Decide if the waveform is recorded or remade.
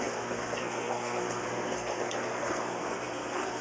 remade